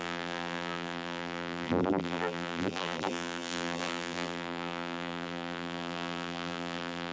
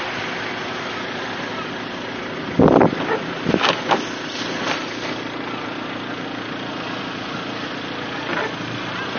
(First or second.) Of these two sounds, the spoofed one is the first